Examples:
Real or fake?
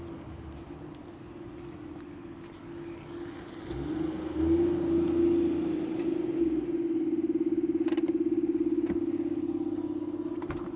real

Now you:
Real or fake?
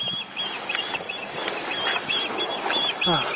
real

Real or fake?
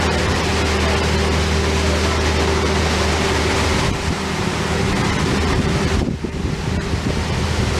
real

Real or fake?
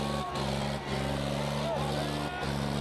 real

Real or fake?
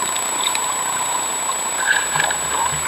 real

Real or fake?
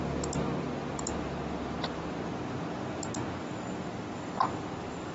real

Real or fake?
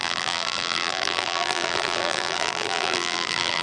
fake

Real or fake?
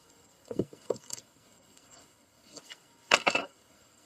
fake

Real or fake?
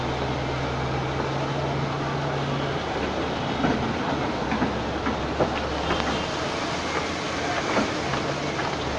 real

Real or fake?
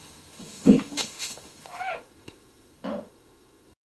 fake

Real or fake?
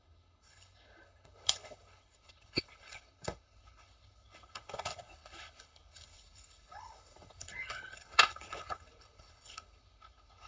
fake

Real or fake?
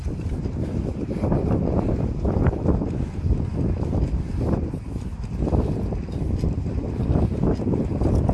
real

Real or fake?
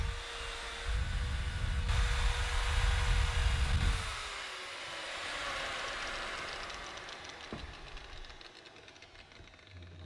real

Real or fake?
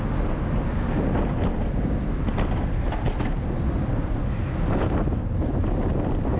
real